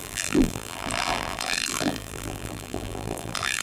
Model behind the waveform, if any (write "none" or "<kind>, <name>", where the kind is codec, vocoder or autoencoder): vocoder, BigVGAN v2